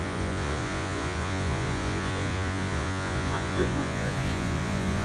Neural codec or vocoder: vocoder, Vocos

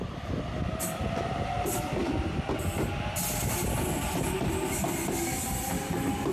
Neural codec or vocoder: none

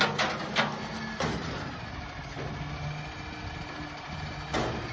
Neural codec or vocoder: none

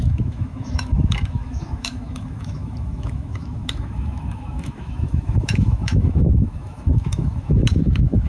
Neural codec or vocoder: autoencoder, DAC-VAE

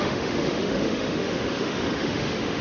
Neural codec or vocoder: autoencoder, DAC-VAE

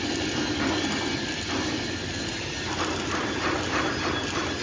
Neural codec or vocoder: none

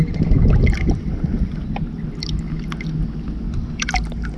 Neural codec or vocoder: none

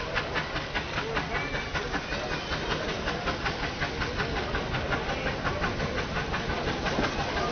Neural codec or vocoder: none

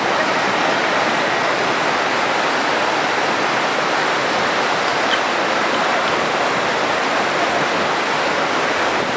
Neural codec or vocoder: none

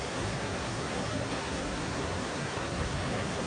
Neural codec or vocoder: codec, SNAC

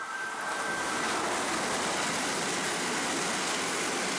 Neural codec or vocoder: none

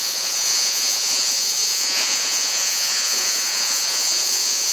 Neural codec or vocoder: vocoder, Vocos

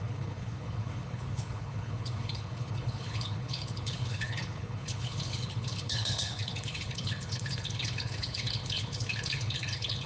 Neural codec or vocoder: codec, HILCodec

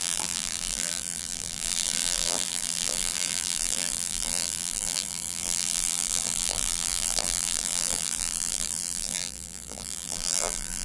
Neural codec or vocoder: vocoder, BigVGAN v2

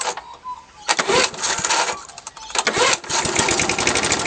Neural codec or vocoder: none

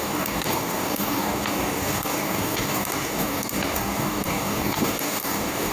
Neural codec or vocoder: codec, DAC